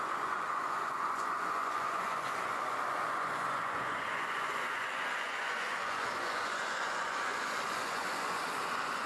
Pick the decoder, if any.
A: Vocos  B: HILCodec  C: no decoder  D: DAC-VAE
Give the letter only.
A